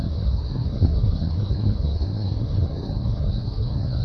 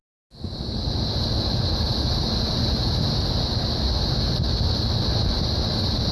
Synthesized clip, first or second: first